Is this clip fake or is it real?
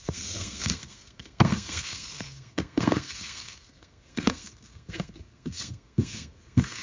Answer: fake